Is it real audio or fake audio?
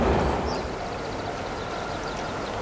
real